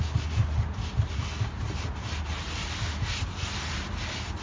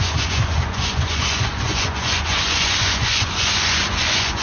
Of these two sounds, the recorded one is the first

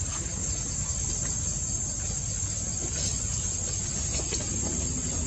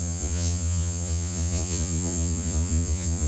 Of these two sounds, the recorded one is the first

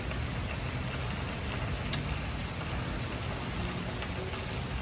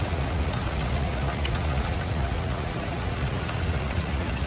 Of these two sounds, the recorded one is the first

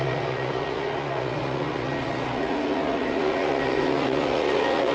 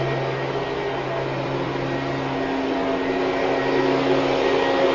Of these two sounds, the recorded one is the second